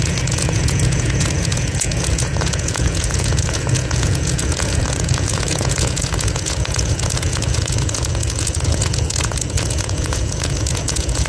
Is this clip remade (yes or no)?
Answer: yes